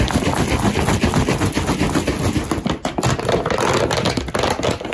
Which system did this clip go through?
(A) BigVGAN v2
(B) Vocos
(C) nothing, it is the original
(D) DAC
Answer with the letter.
C